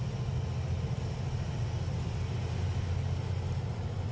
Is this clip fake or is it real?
real